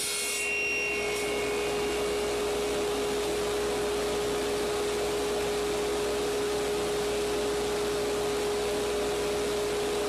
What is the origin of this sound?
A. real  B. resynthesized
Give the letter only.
A